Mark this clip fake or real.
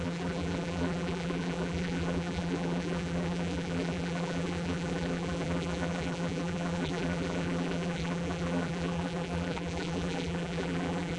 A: fake